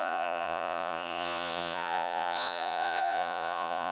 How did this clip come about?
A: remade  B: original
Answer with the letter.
A